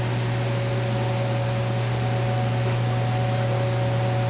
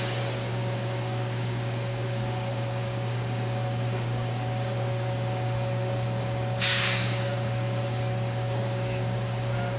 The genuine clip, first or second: first